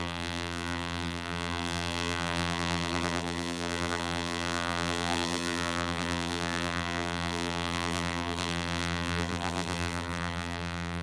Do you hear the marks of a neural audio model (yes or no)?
yes